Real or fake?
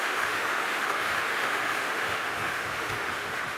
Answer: fake